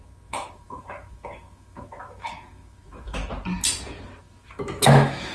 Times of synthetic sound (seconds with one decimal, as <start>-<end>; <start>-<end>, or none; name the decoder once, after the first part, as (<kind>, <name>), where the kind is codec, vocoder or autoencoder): 0.0-3.2 (autoencoder, DAC-VAE); 4.2-5.3